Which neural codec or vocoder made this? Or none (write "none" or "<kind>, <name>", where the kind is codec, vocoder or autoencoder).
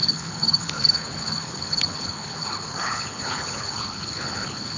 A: codec, HILCodec